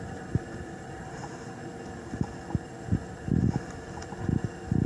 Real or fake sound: real